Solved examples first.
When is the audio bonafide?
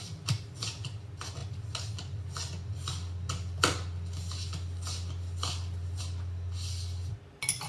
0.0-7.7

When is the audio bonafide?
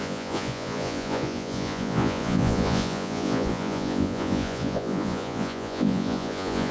none